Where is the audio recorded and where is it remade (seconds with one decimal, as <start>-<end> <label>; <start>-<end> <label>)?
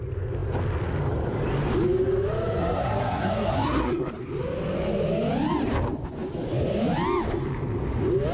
0.0-2.6 recorded; 2.6-4.1 remade; 4.1-8.3 recorded